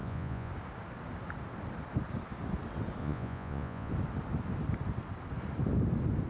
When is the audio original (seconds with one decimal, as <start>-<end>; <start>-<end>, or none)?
0.5-3.0; 3.9-6.3